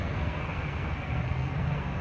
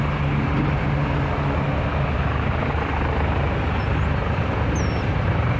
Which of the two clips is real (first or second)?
second